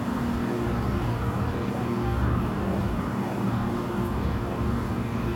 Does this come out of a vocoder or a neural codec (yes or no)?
yes